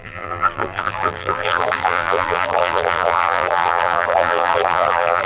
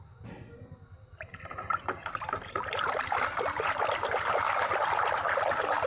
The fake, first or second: first